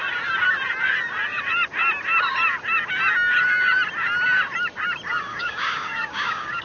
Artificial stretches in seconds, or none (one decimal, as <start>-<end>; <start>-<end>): 5.3-6.6